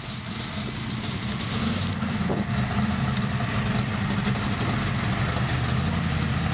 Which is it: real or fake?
real